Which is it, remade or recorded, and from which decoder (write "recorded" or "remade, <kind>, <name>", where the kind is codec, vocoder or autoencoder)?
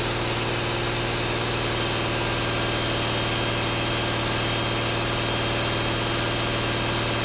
recorded